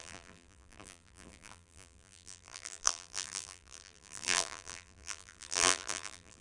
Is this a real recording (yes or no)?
no